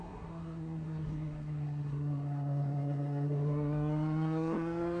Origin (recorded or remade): remade